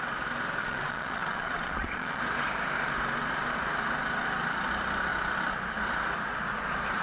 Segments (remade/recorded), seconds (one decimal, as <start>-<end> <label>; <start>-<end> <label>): 0.0-0.6 recorded; 0.6-2.2 remade; 2.2-7.0 recorded